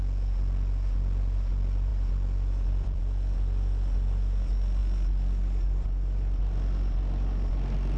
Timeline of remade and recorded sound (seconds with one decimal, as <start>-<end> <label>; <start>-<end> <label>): 0.0-1.9 recorded; 1.9-3.0 remade; 3.0-4.8 recorded; 4.8-7.5 remade; 7.5-8.0 recorded